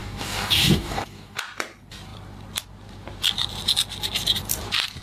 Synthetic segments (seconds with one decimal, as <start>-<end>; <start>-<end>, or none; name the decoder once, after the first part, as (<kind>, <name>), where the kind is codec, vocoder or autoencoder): 0.0-1.4 (codec, DAC)